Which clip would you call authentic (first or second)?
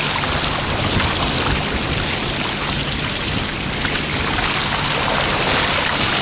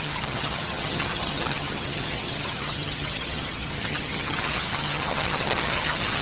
first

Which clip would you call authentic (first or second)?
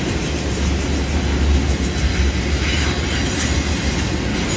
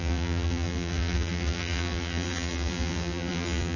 first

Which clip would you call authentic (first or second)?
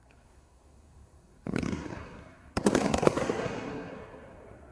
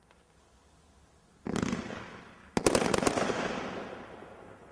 second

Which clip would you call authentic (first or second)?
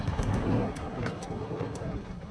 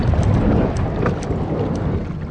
second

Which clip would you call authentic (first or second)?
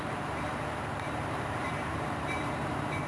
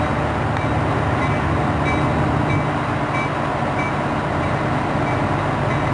second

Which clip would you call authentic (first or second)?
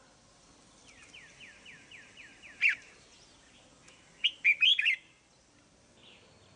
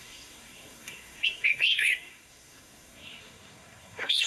first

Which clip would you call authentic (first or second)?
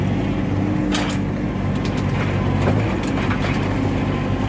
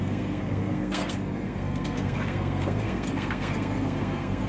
first